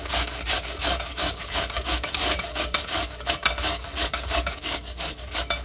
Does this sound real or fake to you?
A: fake